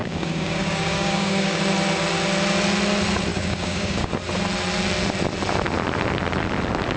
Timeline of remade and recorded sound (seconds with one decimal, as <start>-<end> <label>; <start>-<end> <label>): 0.0-1.6 remade; 1.6-3.3 recorded; 3.3-4.1 remade; 4.1-7.0 recorded